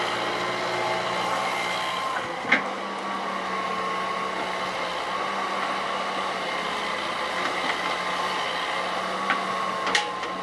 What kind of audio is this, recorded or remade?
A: recorded